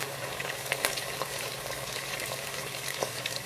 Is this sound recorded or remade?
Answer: remade